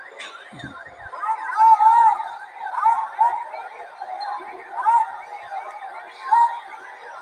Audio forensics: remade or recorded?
recorded